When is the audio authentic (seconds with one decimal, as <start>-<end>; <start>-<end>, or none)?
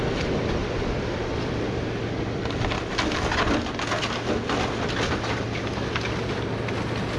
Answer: 0.0-7.2